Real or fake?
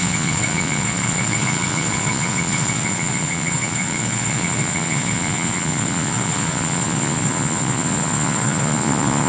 fake